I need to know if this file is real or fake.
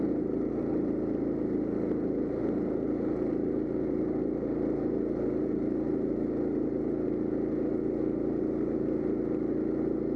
real